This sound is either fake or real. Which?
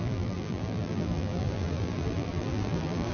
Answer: fake